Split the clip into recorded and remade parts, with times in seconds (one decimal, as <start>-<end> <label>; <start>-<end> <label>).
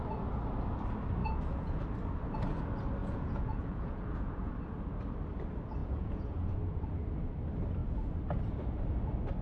0.0-1.2 recorded; 1.2-1.8 remade; 1.8-3.0 recorded; 3.0-4.5 remade; 4.5-5.8 recorded; 5.8-6.6 remade; 6.6-9.4 recorded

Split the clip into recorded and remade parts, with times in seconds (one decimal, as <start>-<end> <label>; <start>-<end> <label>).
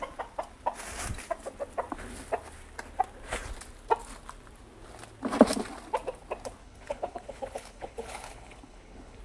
0.0-6.6 recorded; 6.6-9.2 remade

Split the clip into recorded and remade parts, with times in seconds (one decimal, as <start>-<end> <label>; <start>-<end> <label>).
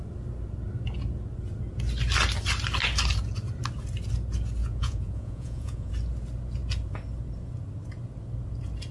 0.0-4.6 recorded; 4.6-5.9 remade; 5.9-8.9 recorded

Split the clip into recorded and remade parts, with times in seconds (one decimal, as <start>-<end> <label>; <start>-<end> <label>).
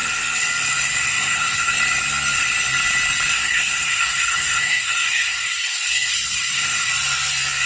0.0-1.1 recorded; 1.1-1.8 remade; 1.8-3.3 recorded; 3.3-6.9 remade; 6.9-7.7 recorded